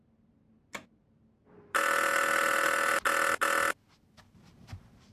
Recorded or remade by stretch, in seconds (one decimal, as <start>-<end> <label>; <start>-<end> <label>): 0.0-5.1 recorded